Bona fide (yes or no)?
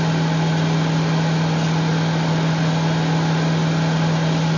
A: yes